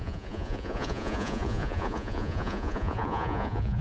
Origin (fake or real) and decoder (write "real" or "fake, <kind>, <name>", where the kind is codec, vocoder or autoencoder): fake, vocoder, Vocos